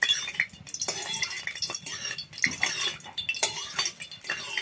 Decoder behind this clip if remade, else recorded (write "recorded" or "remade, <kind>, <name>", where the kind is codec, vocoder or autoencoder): recorded